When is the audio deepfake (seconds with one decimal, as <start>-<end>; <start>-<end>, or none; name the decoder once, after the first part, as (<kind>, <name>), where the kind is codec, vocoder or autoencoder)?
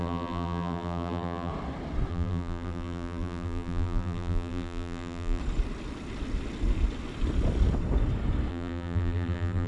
0.0-1.5 (vocoder, BigVGAN v2); 2.1-5.4; 8.5-9.7